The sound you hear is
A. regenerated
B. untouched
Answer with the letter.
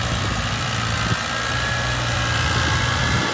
B